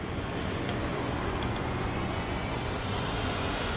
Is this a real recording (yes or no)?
no